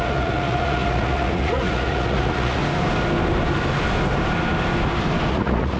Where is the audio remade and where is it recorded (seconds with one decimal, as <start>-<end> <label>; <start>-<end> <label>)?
0.0-2.6 remade; 2.6-5.3 recorded; 5.3-5.8 remade